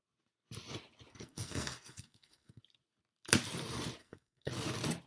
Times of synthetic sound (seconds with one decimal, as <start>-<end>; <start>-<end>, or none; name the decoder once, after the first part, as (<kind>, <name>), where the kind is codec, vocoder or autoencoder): 1.1-2.6 (codec, SNAC); 4.0-4.5